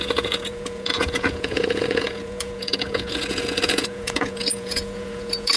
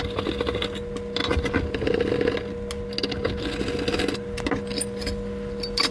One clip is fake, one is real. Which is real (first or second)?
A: second